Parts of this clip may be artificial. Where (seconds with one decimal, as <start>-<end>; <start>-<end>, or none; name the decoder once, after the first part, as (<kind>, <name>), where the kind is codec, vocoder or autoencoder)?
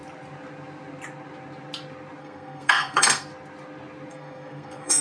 2.2-3.3 (codec, SNAC); 4.1-5.0